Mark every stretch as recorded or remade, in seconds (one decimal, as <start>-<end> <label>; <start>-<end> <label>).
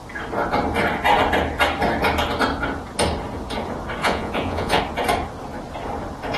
0.0-4.0 recorded; 4.0-4.8 remade; 4.8-6.4 recorded